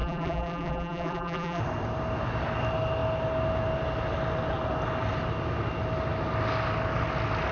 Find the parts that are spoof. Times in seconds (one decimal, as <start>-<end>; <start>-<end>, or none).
0.0-1.6